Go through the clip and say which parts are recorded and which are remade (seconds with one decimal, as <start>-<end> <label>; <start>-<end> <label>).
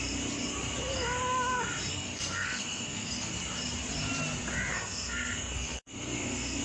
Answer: 0.0-1.9 recorded; 1.9-3.3 remade; 3.3-4.7 recorded; 4.7-6.6 remade